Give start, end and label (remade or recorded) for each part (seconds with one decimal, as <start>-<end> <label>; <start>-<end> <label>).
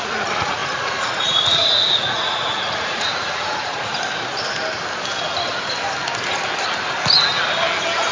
0.0-3.9 remade; 3.9-8.1 recorded